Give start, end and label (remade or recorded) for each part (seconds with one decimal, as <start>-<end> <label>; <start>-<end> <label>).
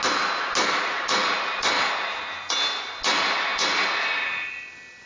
0.0-5.1 recorded